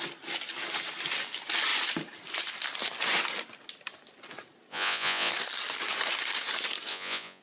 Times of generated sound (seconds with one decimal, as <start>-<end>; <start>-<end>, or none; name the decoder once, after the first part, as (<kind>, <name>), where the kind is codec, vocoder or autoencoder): 4.7-5.3 (vocoder, Vocos); 6.9-7.4

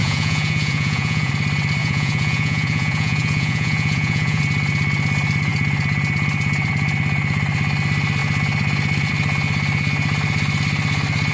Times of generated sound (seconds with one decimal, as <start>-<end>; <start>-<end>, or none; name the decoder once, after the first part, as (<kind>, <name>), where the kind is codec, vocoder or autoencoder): 0.0-1.3 (vocoder, Vocos); 1.8-4.4

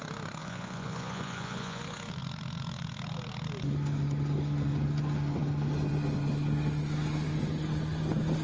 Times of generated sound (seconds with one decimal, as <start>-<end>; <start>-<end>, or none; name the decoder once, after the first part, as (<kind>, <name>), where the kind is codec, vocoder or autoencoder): 0.4-1.8 (vocoder, Vocos)

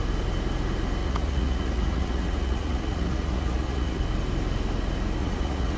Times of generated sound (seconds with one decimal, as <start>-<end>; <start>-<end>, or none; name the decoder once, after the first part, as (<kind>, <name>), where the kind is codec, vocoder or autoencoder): 1.0-4.0 (vocoder, Vocos); 5.2-5.8

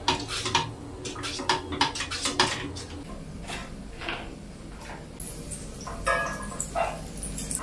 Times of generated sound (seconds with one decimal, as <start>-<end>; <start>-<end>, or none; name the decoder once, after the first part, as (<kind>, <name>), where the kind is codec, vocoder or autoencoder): none

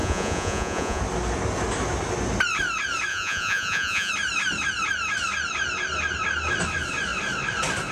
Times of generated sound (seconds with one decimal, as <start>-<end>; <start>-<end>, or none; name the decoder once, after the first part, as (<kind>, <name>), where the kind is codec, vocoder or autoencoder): 0.0-1.0 (vocoder, Vocos); 3.1-4.1

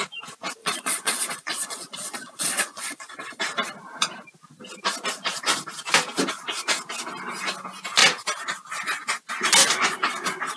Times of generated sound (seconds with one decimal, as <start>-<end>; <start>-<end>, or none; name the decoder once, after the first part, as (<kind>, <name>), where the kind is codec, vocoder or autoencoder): 0.6-3.4 (vocoder, Vocos)

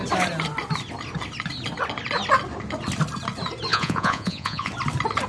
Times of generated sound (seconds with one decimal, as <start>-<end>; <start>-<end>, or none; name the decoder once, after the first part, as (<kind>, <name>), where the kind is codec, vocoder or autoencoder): 3.7-4.7 (vocoder, Vocos)